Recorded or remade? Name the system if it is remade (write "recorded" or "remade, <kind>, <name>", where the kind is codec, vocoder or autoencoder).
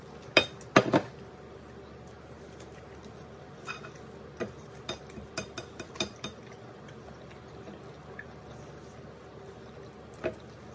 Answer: recorded